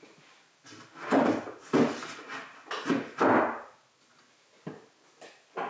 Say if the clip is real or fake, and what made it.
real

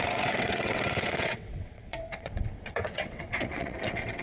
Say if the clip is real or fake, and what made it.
fake, vocoder, WaveNeXt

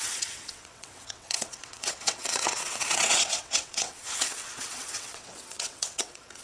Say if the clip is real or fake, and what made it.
fake, vocoder, WaveNeXt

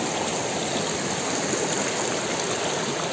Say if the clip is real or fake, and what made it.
real